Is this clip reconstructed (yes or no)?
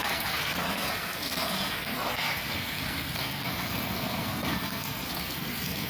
yes